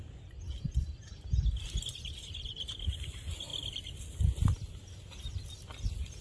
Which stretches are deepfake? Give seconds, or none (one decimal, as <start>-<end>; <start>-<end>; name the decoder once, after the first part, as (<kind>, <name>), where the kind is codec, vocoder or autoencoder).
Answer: none